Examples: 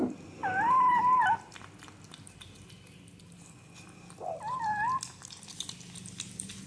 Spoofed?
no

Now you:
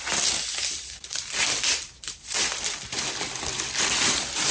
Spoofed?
yes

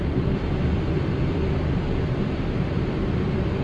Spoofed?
yes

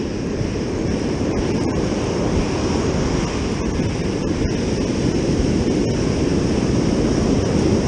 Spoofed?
no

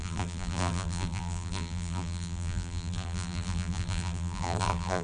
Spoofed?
yes